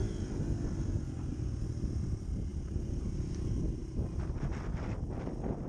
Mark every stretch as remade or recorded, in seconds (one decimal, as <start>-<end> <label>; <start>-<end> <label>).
0.0-5.7 recorded

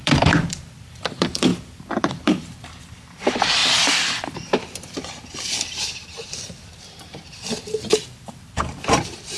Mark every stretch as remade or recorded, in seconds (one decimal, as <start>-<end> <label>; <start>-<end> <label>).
0.0-9.4 remade

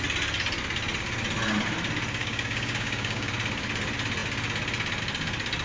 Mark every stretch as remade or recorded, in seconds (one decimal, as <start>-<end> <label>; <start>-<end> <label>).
0.0-2.2 recorded; 2.2-3.3 remade; 3.3-5.6 recorded